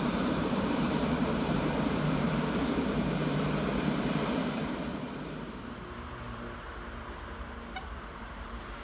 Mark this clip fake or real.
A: fake